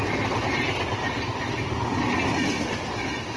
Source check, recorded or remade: recorded